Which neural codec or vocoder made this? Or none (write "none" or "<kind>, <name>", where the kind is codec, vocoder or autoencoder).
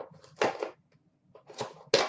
none